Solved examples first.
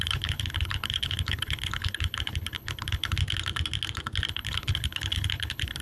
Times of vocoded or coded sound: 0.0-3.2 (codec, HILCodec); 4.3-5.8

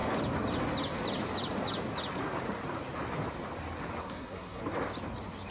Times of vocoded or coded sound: 4.0-4.6 (codec, SNAC)

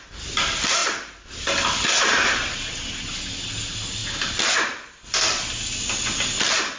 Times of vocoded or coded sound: none